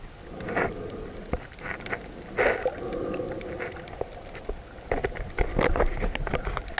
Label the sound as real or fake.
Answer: real